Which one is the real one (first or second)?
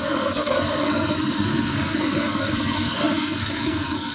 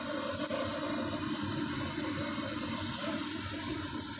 second